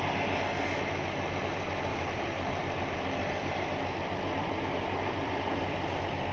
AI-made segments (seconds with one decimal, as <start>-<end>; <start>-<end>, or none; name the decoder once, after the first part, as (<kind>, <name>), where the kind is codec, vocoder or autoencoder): 1.9-5.6 (vocoder, BigVGAN v2)